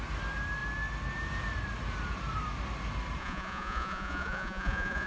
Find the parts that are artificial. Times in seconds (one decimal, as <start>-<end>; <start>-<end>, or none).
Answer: 3.2-5.1